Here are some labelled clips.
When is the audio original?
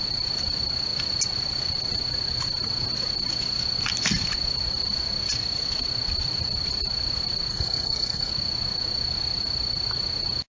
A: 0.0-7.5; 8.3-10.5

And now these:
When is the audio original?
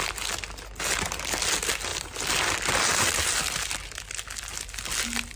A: 0.0-5.4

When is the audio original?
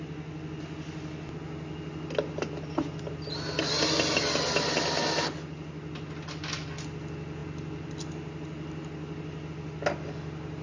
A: 0.0-10.6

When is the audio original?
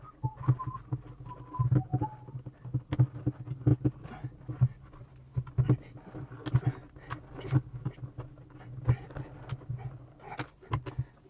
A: 0.0-11.3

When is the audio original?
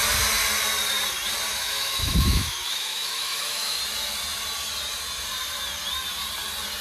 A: 0.0-1.5; 3.8-6.8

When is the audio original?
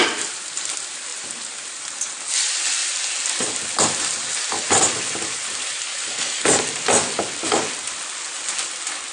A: 0.0-5.9; 6.6-9.1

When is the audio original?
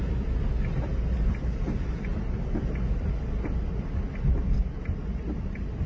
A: 0.0-5.9